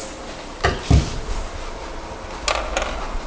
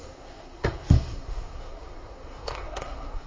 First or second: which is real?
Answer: first